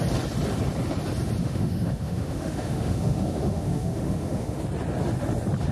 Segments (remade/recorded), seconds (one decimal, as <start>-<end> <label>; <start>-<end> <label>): 0.0-1.4 recorded; 1.4-4.6 remade; 4.6-5.7 recorded